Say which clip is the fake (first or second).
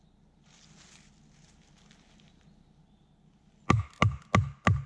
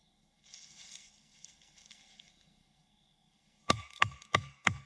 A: second